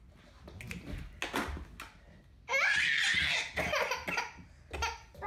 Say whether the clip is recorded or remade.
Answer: recorded